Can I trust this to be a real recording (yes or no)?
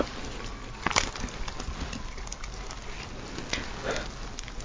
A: yes